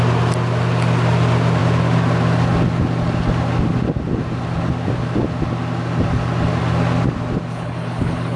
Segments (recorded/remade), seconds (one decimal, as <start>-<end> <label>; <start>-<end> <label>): 0.0-7.5 recorded; 7.5-8.4 remade